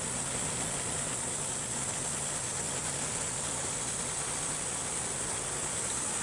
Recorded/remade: recorded